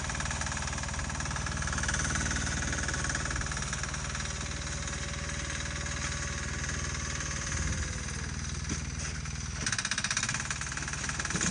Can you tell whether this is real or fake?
real